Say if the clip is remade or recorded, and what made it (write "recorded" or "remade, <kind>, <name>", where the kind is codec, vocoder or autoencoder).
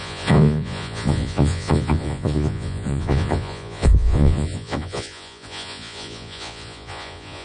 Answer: remade, vocoder, Vocos